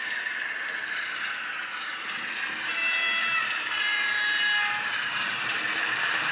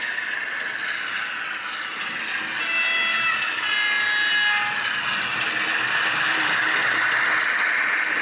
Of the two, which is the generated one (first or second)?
first